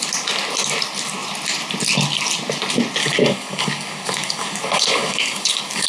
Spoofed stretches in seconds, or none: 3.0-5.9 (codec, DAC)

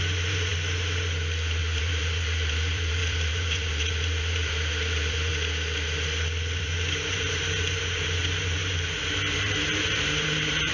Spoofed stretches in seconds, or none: 0.0-0.5 (vocoder, BigVGAN v2); 1.6-5.3; 6.6-10.7

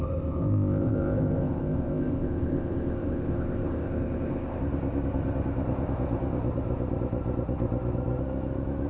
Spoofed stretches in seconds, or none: 0.0-4.6 (codec, ZipCodec)

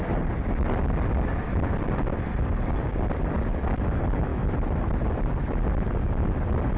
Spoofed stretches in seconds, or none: 0.0-6.8 (vocoder, BigVGAN v2)

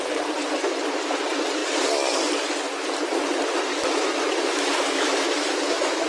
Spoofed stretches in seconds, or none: 3.7-6.1 (autoencoder, DAC-VAE)

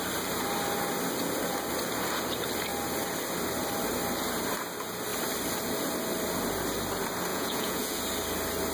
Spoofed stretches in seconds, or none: 7.3-8.0 (vocoder, Vocos)

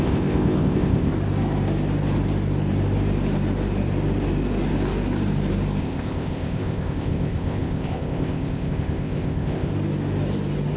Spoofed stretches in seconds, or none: 0.0-1.1 (codec, ZipCodec); 5.8-9.7

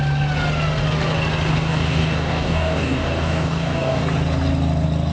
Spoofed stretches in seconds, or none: 1.5-4.0 (codec, DAC)